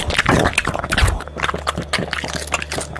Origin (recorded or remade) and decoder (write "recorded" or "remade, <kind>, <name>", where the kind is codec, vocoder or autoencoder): recorded